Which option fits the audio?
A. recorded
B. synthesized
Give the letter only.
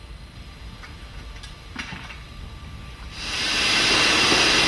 A